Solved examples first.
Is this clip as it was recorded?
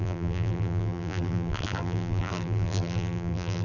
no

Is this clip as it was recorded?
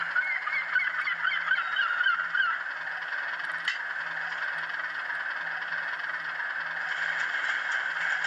yes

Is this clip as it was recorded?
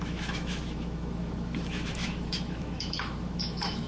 no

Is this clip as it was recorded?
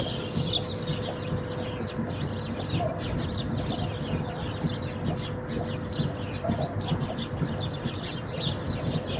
yes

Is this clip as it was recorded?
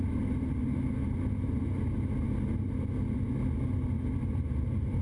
yes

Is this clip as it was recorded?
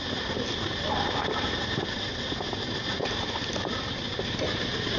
yes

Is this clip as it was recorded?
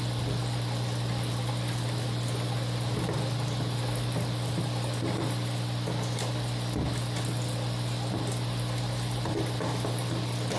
no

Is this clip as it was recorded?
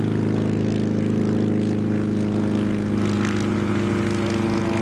yes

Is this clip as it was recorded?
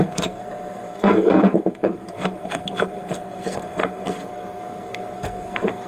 no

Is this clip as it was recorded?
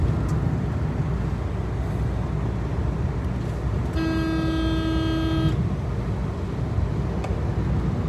yes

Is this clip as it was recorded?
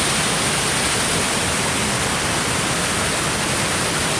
yes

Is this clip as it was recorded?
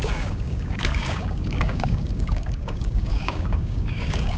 no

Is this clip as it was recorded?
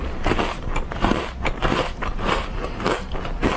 yes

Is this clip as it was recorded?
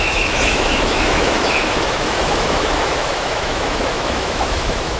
no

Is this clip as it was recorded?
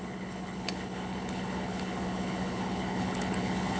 no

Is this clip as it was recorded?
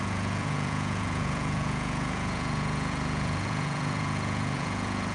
no